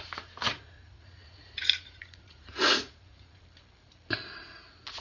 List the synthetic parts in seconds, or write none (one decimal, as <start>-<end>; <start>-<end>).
0.4-3.4